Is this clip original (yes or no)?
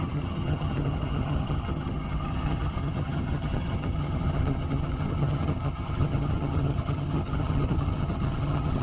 no